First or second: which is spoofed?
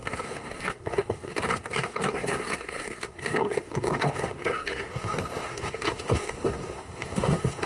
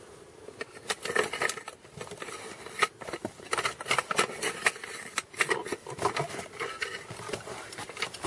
first